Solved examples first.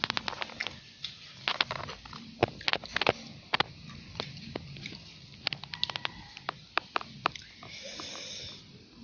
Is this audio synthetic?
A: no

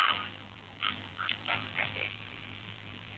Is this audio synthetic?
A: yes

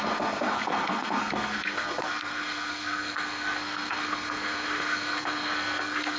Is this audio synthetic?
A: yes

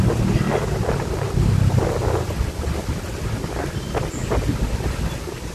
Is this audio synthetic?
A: no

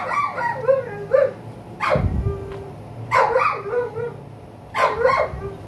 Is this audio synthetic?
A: no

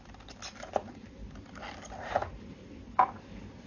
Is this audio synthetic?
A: no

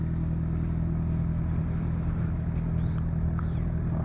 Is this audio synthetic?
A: no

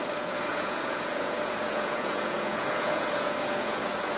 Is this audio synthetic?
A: yes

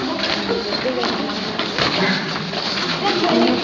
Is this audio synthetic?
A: no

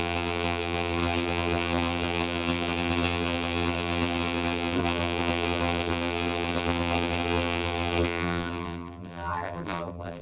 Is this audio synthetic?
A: yes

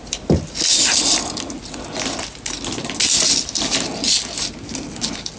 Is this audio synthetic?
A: no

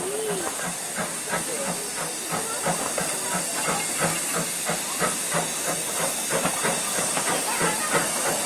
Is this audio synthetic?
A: no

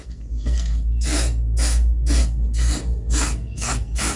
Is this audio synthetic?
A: yes